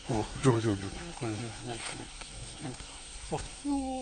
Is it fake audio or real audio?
fake